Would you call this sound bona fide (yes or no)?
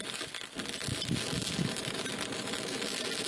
yes